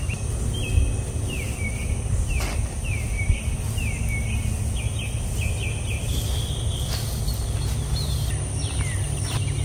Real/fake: real